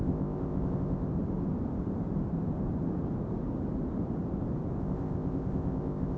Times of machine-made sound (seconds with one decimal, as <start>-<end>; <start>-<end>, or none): 0.0-1.1; 4.8-6.2